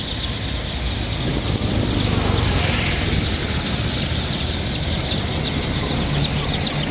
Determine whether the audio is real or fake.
real